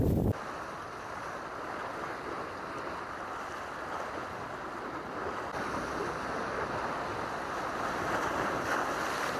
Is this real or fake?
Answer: real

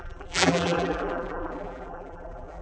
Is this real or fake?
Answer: fake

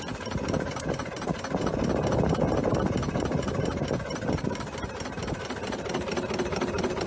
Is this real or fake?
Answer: fake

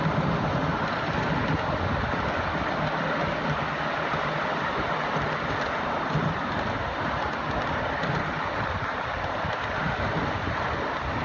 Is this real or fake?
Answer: real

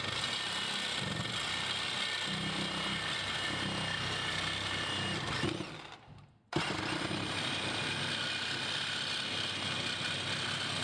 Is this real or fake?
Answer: real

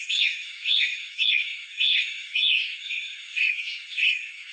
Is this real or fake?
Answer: fake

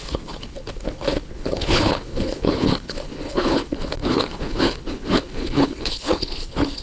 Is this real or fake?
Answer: fake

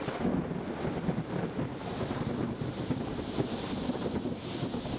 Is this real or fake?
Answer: real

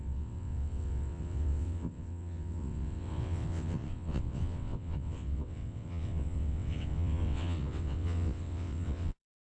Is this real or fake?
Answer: fake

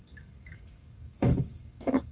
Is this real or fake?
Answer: fake